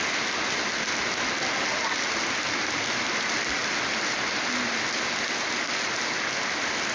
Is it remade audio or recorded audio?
recorded